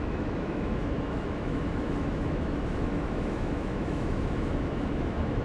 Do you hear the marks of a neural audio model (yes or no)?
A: yes